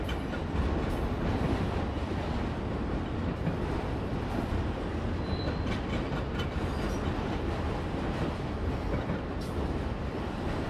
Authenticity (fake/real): real